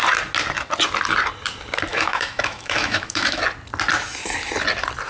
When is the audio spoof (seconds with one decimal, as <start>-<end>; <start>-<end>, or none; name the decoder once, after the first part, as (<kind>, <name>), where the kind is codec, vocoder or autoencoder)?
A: 1.9-3.4 (autoencoder, DAC-VAE)